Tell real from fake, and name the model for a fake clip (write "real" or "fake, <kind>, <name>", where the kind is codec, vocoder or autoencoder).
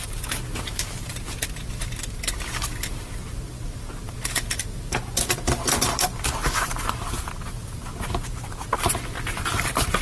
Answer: real